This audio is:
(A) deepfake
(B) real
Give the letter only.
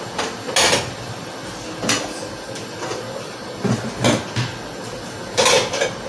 B